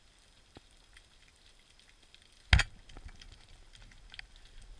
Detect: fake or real real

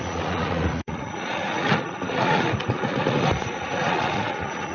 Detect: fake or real fake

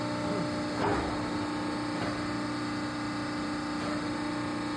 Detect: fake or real real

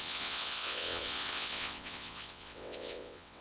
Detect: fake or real fake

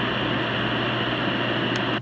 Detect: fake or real real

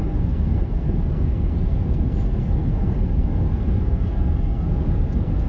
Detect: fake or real fake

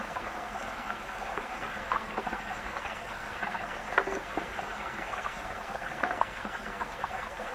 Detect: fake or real fake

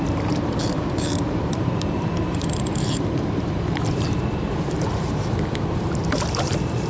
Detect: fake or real fake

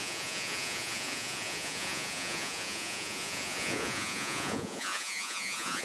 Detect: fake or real fake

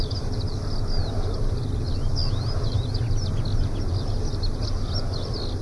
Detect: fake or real real